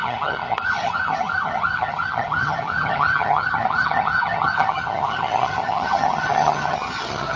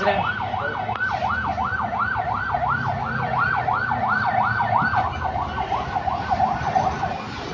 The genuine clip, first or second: second